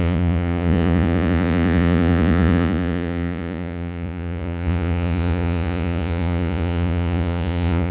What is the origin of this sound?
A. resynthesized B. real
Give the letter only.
A